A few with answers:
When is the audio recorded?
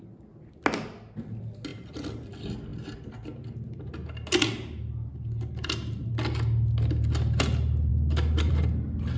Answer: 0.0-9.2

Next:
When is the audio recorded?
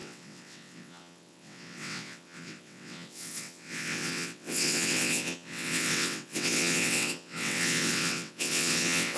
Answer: none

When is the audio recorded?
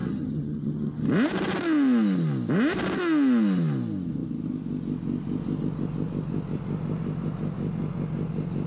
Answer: 1.1-8.7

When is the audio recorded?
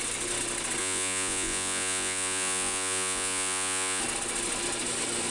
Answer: 0.0-0.8; 4.0-5.3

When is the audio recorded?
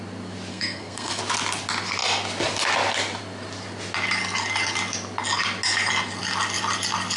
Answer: 0.0-0.5; 1.2-7.2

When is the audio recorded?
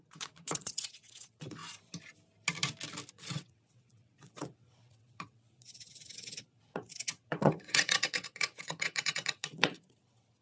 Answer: 1.6-3.1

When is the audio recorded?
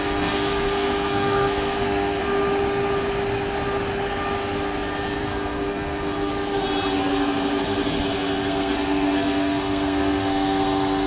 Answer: 2.2-5.2; 6.3-7.1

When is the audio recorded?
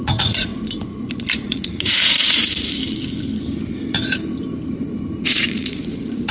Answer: 0.5-1.1; 2.8-5.2